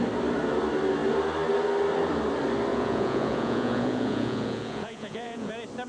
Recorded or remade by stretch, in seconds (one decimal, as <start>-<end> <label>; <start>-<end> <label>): 0.0-2.7 recorded; 2.7-5.5 remade; 5.5-5.9 recorded

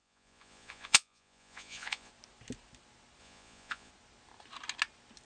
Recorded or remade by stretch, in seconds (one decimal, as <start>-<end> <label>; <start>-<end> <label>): 0.0-2.1 remade; 2.1-3.2 recorded; 3.2-3.9 remade; 3.9-5.2 recorded

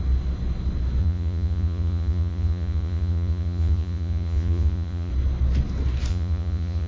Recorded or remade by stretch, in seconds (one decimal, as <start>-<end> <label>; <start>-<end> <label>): 0.0-1.0 recorded; 1.0-5.1 remade; 5.1-6.1 recorded; 6.1-6.9 remade

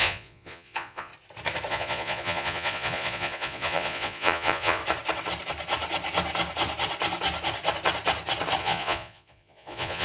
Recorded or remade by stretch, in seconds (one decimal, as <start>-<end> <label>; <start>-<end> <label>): 0.0-1.1 remade; 1.1-1.7 recorded; 1.7-4.8 remade; 4.8-8.6 recorded; 8.6-10.0 remade